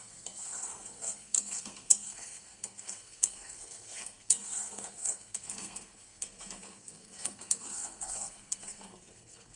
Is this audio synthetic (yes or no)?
yes